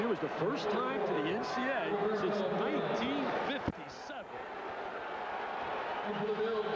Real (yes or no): yes